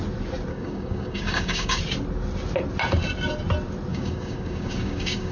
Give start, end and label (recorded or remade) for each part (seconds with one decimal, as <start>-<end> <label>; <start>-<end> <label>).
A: 0.0-0.5 recorded; 0.5-1.8 remade; 1.8-3.9 recorded; 3.9-5.3 remade